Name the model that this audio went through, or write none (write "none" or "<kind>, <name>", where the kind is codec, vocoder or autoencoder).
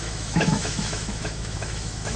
autoencoder, DAC-VAE